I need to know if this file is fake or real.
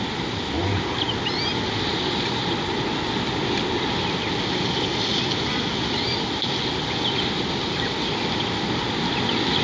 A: real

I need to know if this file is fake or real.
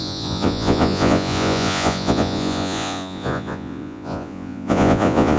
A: fake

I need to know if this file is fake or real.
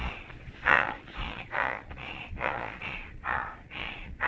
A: fake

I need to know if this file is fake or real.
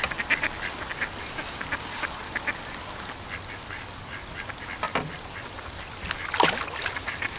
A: real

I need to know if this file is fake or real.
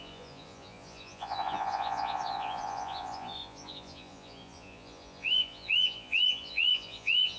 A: fake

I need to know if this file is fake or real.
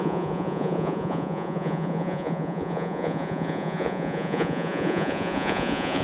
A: fake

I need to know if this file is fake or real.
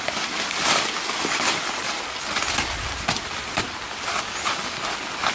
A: real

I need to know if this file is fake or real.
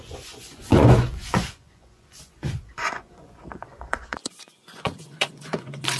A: fake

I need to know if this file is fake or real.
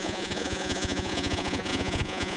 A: fake